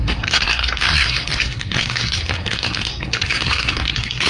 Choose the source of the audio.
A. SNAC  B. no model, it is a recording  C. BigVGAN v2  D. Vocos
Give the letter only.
A